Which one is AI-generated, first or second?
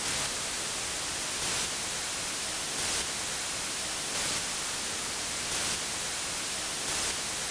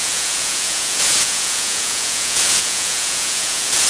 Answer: second